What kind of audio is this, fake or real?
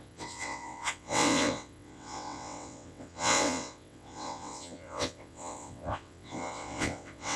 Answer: fake